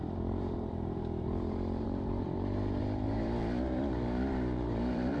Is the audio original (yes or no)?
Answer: no